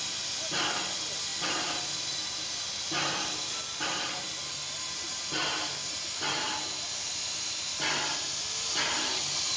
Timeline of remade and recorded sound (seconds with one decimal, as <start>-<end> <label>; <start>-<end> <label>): 0.0-9.6 recorded